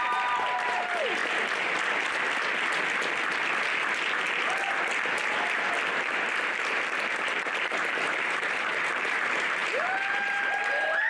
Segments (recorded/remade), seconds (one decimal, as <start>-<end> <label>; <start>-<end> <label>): 0.0-1.2 remade; 1.2-5.9 recorded; 5.9-11.1 remade